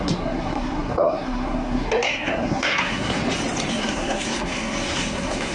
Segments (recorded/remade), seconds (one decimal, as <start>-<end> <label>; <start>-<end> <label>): 0.0-3.2 remade; 3.2-3.7 recorded; 3.7-5.5 remade